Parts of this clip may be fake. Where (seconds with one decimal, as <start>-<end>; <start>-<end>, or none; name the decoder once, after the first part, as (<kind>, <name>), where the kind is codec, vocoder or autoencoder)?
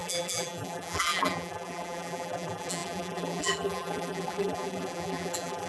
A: 0.0-5.7 (vocoder, BigVGAN v2)